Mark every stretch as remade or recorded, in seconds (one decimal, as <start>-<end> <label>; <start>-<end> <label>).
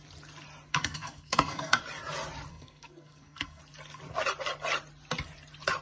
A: 0.0-0.7 recorded; 0.7-1.8 remade; 1.8-2.5 recorded; 2.5-3.6 remade; 3.6-5.8 recorded